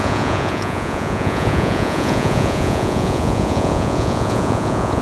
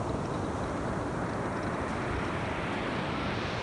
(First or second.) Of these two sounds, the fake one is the first